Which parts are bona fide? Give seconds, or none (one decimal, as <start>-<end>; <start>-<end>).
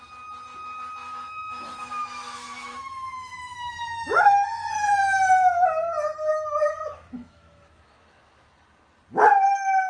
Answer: 0.0-1.0; 4.7-6.3; 8.5-9.9